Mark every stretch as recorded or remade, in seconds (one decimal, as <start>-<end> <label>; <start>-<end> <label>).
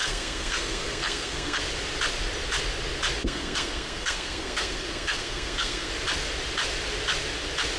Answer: 0.0-1.6 remade; 1.6-3.2 recorded; 3.2-5.9 remade; 5.9-7.8 recorded